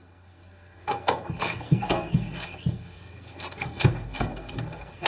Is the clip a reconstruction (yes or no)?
yes